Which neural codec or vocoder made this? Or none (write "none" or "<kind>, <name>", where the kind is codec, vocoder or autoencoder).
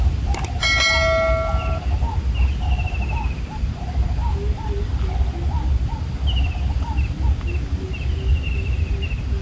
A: none